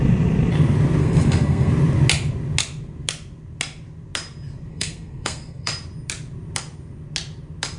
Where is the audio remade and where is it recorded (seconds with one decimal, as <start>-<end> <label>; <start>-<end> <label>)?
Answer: 0.0-1.0 recorded; 1.0-1.7 remade; 1.7-4.7 recorded; 4.7-5.7 remade; 5.7-7.8 recorded